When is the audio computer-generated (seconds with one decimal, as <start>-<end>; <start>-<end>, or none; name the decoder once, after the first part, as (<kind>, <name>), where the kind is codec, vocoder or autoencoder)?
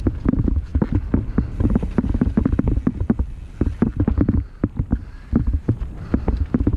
none